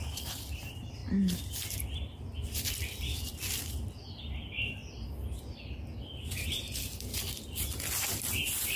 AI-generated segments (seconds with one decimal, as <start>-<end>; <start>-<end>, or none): 0.0-1.0; 4.2-4.8; 6.0-7.1